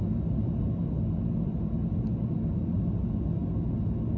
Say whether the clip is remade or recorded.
recorded